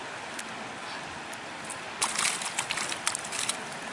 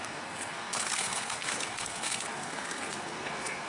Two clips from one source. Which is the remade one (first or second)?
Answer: second